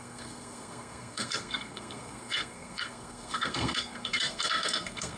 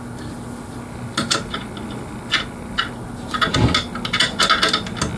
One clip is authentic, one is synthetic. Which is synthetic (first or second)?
first